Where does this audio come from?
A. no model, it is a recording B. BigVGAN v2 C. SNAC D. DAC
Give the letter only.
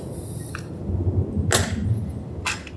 A